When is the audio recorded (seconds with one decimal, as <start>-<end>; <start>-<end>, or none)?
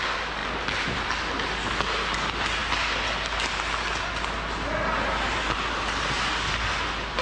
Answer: 0.0-7.2